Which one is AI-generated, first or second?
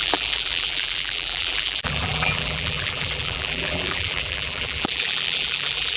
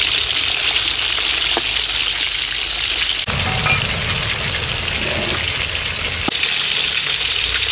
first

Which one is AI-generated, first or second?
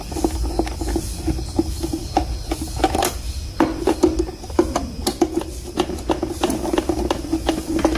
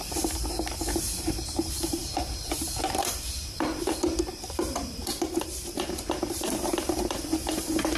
second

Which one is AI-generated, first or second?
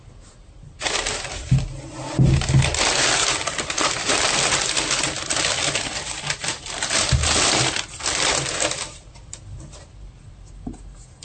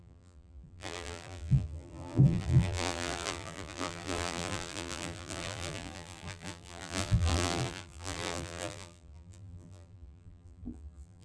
second